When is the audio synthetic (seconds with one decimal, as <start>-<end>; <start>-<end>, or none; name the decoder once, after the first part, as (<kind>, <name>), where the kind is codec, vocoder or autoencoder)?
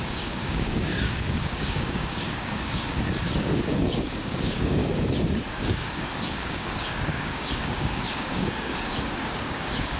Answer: 0.0-4.8 (codec, DAC); 5.5-10.0